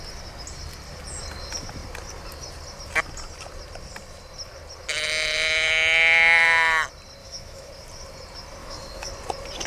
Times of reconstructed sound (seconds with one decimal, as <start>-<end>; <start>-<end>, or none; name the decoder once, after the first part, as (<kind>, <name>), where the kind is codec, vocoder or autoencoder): 7.2-7.7 (autoencoder, DAC-VAE); 8.6-9.1

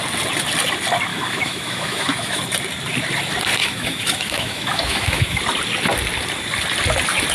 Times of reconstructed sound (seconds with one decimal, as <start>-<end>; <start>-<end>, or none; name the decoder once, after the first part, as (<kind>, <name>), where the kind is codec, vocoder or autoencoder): 1.1-2.4 (autoencoder, DAC-VAE); 3.6-5.4

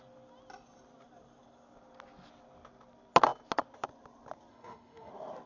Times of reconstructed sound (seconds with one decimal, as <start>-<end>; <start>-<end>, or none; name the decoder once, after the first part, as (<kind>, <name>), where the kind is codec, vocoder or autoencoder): 4.5-5.1 (autoencoder, DAC-VAE)

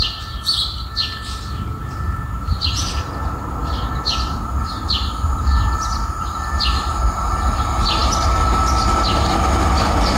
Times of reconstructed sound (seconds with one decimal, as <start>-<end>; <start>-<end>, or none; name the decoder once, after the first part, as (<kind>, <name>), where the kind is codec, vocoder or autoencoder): none

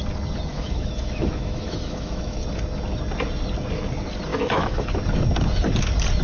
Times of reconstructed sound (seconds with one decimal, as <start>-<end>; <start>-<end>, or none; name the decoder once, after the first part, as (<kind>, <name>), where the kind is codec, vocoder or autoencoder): 0.5-2.4 (autoencoder, DAC-VAE); 4.3-4.9

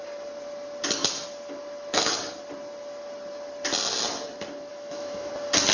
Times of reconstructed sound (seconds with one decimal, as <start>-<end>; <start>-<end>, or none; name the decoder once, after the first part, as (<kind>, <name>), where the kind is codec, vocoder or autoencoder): 4.7-5.3 (autoencoder, DAC-VAE)

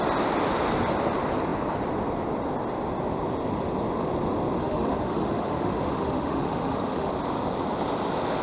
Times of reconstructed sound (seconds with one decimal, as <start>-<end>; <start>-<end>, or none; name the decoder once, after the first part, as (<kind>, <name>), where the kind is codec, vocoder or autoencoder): 4.6-7.1 (autoencoder, DAC-VAE)